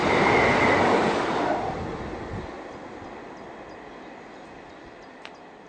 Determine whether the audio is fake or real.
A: real